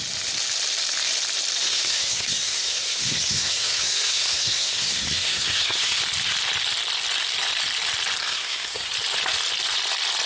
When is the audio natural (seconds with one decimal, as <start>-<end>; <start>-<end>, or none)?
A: 0.0-1.6; 6.0-8.2; 8.9-10.3